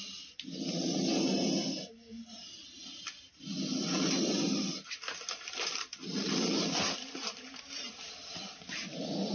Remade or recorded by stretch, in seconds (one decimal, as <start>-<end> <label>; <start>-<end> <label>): 0.0-9.3 recorded